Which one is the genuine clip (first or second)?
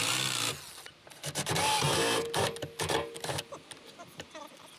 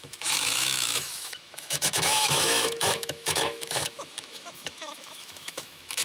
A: first